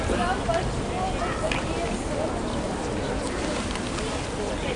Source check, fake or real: real